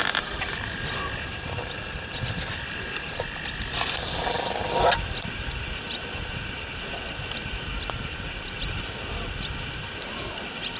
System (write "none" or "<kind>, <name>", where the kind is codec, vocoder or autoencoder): none